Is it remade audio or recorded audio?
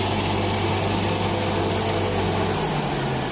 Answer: recorded